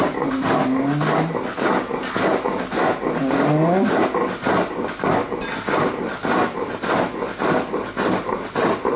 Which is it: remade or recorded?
recorded